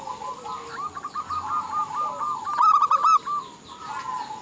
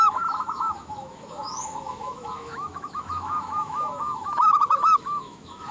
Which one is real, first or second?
first